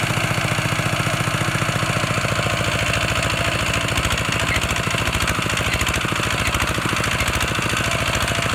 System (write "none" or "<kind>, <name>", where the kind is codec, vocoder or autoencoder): none